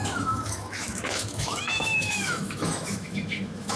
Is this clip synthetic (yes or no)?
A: yes